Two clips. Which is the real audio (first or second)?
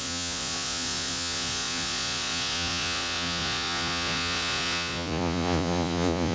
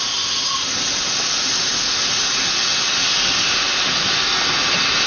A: second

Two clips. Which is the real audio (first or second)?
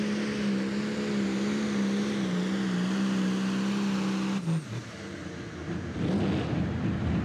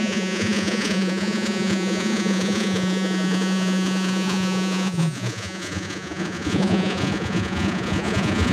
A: first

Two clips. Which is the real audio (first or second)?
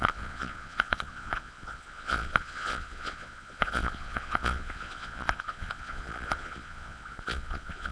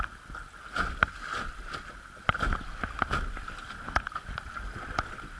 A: second